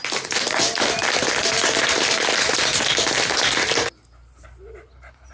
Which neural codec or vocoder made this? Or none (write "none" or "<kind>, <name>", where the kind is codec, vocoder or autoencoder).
none